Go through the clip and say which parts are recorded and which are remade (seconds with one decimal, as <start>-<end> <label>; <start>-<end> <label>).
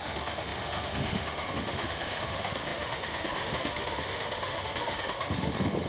0.0-5.9 remade